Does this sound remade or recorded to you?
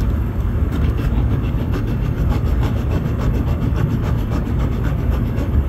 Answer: remade